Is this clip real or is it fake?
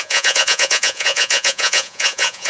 fake